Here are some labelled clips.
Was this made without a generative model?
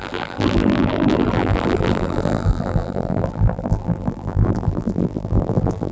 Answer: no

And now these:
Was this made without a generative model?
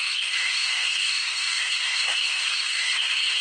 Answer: no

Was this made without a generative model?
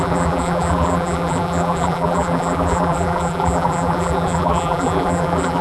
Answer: no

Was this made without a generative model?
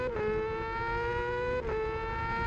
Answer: yes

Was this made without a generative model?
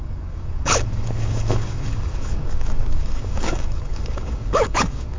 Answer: no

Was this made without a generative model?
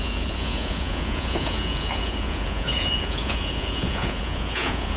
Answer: no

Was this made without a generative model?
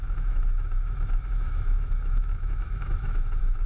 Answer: no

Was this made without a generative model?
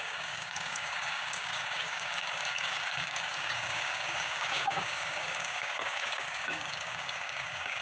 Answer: no